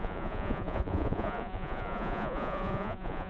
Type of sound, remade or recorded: remade